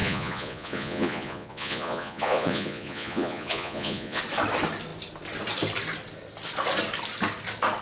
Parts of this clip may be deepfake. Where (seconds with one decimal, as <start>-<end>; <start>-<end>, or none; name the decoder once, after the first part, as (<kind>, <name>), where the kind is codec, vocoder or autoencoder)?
0.0-4.2 (vocoder, Vocos)